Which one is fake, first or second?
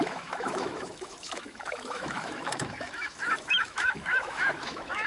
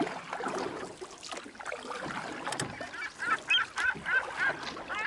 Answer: first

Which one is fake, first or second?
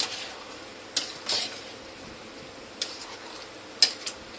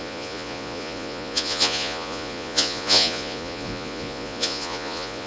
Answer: second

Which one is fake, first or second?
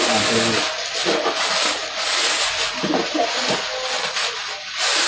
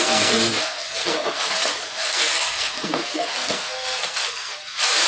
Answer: second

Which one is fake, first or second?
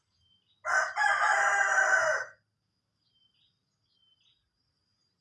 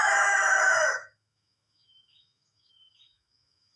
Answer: second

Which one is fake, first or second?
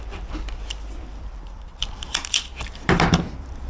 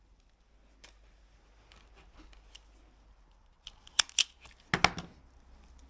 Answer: first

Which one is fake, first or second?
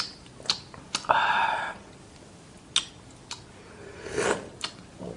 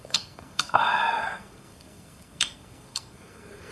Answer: second